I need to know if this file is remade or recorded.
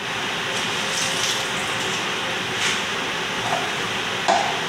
recorded